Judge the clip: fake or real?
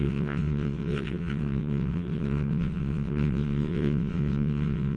fake